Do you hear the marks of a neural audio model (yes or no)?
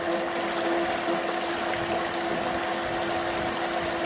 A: no